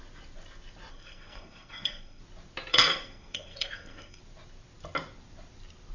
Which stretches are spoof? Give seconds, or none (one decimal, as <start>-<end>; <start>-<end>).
0.9-2.2; 2.7-4.2